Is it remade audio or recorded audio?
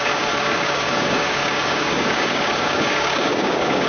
remade